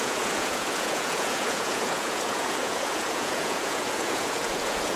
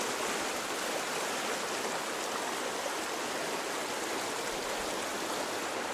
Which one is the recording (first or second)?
second